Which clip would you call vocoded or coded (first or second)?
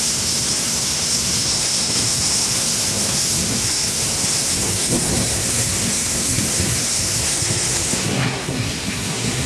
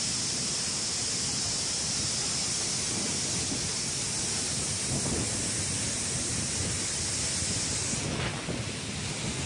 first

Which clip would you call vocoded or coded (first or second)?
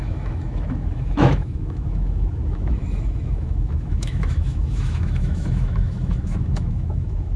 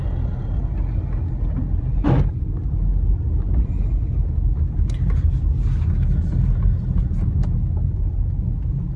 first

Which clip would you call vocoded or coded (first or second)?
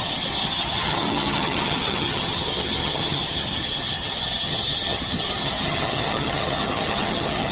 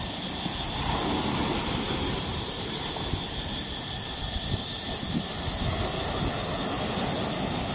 first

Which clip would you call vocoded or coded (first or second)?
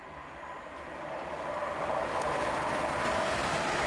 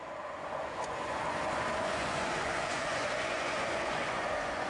second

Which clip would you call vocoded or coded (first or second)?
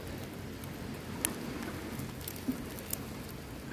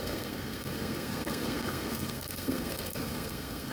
second